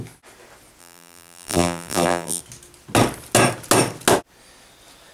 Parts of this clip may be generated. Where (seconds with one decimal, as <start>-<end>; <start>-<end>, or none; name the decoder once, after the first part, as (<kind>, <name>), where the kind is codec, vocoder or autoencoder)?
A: 0.8-2.4 (vocoder, BigVGAN v2)